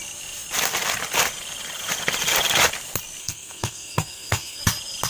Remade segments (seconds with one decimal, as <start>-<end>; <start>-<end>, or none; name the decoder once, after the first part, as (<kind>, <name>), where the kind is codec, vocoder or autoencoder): 3.2-4.6 (codec, SNAC)